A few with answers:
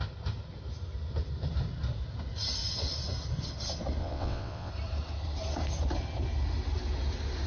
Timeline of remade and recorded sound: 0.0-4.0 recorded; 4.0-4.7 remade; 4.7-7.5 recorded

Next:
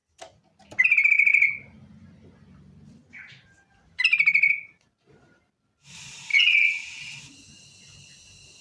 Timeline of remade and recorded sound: 0.0-6.3 recorded; 6.3-7.2 remade; 7.2-8.6 recorded

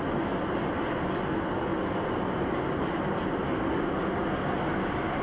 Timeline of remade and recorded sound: 0.0-5.2 recorded

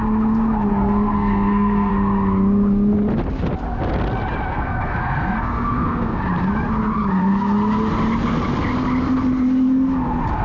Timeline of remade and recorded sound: 0.0-0.7 recorded; 0.7-1.9 remade; 1.9-4.5 recorded; 4.5-6.2 remade; 6.2-10.4 recorded

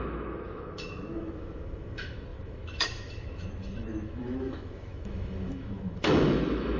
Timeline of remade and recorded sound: 0.0-6.8 remade

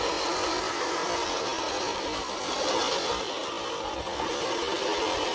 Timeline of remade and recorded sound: 0.0-5.3 recorded

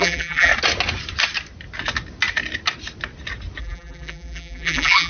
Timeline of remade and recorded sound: 0.0-0.5 remade; 0.5-3.6 recorded; 3.6-5.1 remade